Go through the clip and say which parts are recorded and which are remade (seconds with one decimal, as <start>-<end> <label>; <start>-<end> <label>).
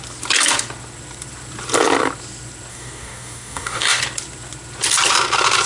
0.0-2.7 recorded; 2.7-4.0 remade; 4.0-5.7 recorded